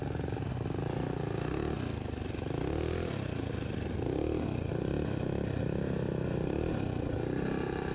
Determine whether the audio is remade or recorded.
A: recorded